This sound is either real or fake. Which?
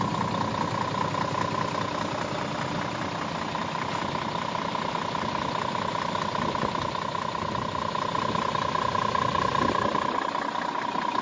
real